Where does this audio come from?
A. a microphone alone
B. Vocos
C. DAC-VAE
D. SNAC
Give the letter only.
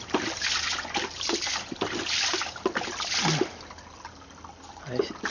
A